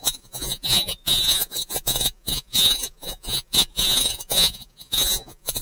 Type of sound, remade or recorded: remade